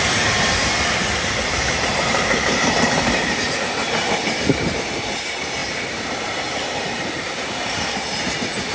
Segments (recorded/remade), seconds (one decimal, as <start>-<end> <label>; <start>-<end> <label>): 0.0-8.7 remade